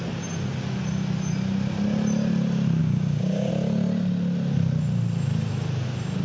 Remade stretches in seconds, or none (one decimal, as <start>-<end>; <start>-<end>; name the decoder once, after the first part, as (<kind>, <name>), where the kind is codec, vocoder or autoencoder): 2.8-3.5 (codec, DAC)